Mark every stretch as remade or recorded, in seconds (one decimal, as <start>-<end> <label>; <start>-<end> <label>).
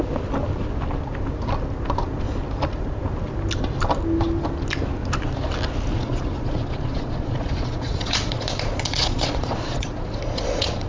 0.0-5.9 recorded; 5.9-10.9 remade